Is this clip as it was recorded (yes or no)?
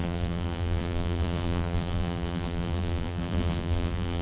no